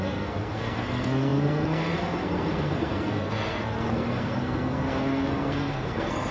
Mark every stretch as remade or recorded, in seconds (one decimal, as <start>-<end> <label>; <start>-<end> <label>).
0.0-6.3 remade